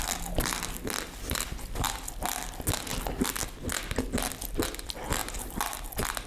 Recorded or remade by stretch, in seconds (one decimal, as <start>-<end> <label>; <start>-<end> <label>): 0.0-6.3 recorded